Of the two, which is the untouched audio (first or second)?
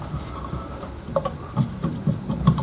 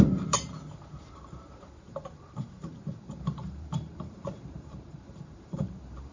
first